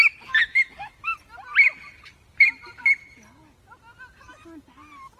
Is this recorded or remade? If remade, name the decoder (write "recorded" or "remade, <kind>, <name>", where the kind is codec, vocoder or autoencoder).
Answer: recorded